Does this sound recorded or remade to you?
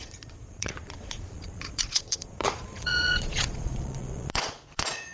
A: remade